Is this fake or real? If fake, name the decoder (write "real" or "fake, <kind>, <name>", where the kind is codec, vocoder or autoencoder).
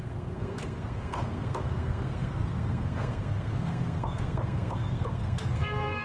fake, codec, SNAC